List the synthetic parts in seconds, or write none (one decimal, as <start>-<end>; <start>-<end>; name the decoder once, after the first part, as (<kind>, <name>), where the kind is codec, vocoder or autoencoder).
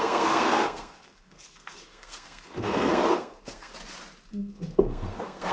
0.0-3.7 (codec, SNAC); 4.3-5.5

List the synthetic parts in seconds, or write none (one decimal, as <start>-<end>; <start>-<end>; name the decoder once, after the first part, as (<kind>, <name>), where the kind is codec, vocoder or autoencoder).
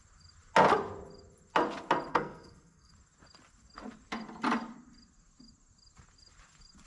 2.1-2.9 (codec, SNAC)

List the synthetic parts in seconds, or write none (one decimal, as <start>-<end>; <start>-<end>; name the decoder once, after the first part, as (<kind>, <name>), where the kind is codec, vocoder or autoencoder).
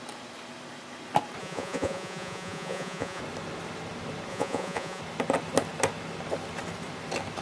1.4-3.2 (vocoder, Vocos); 4.3-5.0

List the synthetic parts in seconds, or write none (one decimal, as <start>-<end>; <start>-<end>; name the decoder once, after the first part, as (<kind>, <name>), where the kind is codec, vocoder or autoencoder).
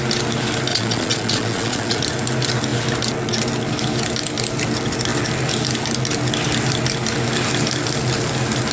0.7-2.0 (vocoder, Vocos)